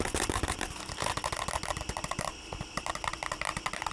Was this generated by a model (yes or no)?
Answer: no